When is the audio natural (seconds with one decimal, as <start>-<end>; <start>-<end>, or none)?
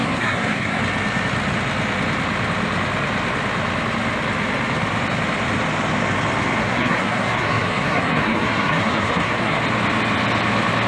0.8-6.6; 9.6-10.9